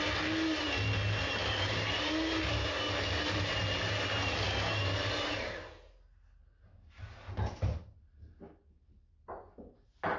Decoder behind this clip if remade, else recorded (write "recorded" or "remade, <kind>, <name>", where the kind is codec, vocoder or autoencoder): recorded